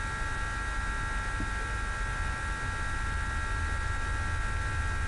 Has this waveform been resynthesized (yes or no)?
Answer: no